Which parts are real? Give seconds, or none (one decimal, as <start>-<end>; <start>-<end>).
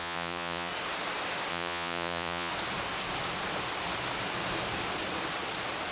0.7-1.5; 2.5-5.9